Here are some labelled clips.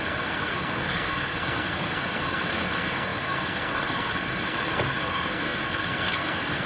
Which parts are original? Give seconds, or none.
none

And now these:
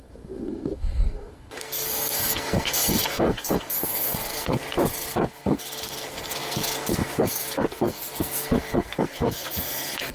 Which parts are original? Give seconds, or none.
4.6-5.1